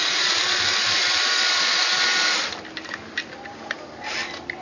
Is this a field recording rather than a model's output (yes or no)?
yes